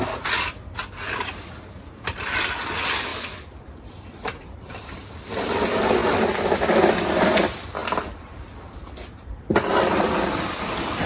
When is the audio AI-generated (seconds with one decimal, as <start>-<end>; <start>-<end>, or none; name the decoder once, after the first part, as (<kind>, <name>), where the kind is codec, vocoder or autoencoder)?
0.0-3.1 (vocoder, BigVGAN v2); 3.6-6.0; 7.2-11.1